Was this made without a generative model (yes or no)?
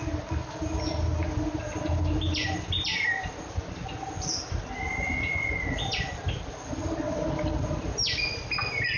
yes